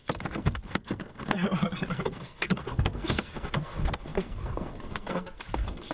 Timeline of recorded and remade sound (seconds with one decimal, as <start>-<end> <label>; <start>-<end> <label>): 0.0-5.9 remade